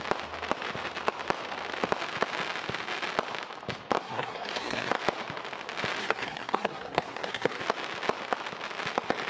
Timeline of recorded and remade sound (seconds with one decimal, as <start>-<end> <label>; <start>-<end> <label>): 0.0-4.0 recorded; 4.0-4.9 remade; 4.9-6.0 recorded; 6.0-7.6 remade; 7.6-9.3 recorded